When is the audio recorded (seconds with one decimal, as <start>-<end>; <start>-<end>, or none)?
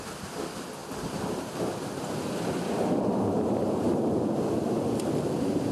none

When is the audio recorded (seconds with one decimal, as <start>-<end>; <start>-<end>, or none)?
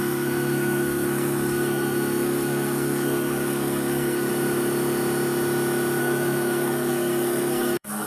4.3-6.0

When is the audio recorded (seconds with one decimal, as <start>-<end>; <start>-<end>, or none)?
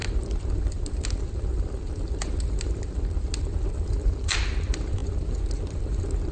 0.0-6.3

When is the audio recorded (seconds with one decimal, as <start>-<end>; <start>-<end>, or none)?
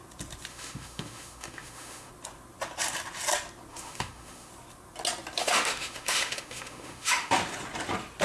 0.0-0.5; 2.1-3.7; 4.5-5.4; 7.3-8.2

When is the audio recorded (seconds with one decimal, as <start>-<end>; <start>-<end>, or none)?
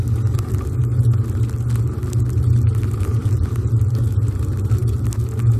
0.0-5.6